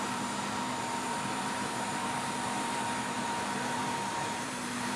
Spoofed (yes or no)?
yes